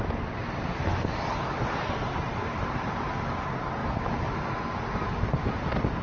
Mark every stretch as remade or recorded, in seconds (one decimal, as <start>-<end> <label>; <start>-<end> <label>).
0.0-6.0 recorded